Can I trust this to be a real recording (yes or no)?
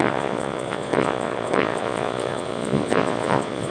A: no